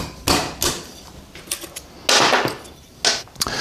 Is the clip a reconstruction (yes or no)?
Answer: no